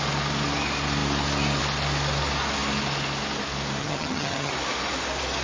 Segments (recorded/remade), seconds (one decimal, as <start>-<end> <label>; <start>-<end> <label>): 0.0-3.8 recorded; 3.8-4.5 remade; 4.5-5.4 recorded